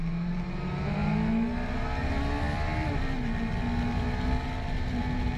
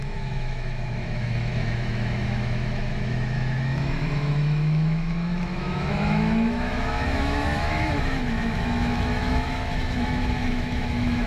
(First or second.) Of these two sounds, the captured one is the first